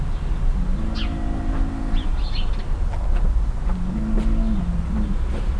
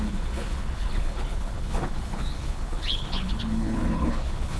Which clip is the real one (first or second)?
first